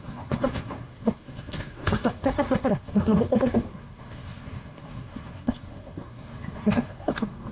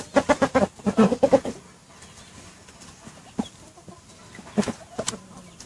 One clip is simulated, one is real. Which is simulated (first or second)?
first